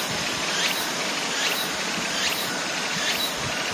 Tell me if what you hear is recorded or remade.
recorded